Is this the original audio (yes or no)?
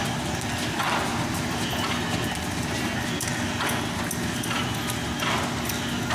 yes